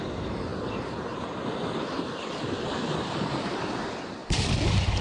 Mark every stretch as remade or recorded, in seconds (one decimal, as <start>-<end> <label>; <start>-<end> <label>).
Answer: 0.0-0.5 remade; 0.5-3.5 recorded; 3.5-5.0 remade